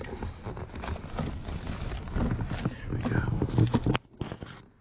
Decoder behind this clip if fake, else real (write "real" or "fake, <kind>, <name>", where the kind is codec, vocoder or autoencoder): real